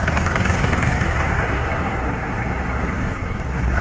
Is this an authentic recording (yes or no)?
no